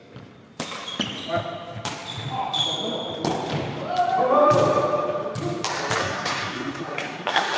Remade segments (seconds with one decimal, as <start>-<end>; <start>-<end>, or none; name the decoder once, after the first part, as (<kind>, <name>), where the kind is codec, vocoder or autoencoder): 6.0-7.6 (codec, SNAC)